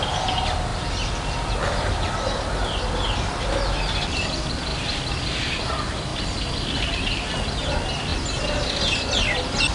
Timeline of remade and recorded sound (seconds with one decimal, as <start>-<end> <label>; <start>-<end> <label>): 0.0-6.1 recorded; 6.1-7.3 remade; 7.3-9.7 recorded